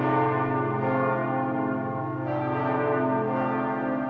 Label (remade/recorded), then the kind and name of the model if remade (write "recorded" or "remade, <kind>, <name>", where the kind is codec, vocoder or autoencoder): recorded